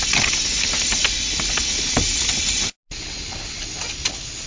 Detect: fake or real real